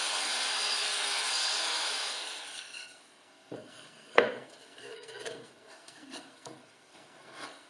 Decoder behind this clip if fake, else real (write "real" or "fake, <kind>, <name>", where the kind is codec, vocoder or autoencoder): fake, codec, SNAC